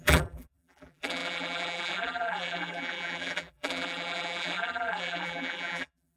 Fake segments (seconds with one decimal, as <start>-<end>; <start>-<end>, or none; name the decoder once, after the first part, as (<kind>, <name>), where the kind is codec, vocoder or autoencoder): 0.0-6.2 (vocoder, BigVGAN v2)